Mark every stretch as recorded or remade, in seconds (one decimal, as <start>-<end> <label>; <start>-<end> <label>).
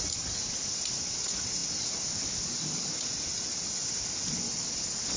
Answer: 0.0-5.2 recorded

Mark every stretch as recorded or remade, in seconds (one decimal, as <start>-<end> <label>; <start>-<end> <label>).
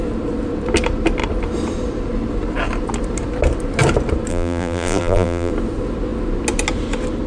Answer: 0.0-4.3 recorded; 4.3-5.5 remade; 5.5-7.3 recorded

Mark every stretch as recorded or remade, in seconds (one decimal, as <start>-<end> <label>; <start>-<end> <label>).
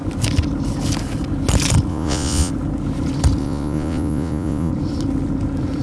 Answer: 0.0-1.9 recorded; 1.9-2.5 remade; 2.5-3.4 recorded; 3.4-4.7 remade; 4.7-5.8 recorded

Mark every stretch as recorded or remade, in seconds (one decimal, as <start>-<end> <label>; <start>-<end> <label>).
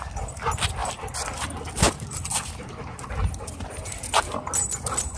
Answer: 0.0-0.8 recorded; 0.8-3.9 remade; 3.9-5.2 recorded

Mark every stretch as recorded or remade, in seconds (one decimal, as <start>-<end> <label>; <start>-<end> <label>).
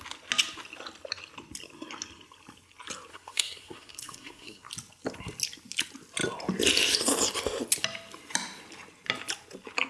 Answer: 0.0-3.1 recorded; 3.1-4.7 remade; 4.7-9.9 recorded